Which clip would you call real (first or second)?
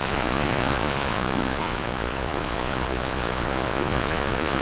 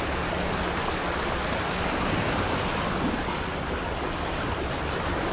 second